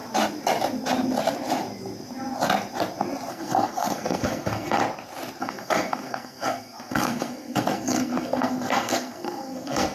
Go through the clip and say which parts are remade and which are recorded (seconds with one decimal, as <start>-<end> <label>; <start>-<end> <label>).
0.0-3.3 recorded; 3.3-4.8 remade; 4.8-5.4 recorded; 5.4-9.9 remade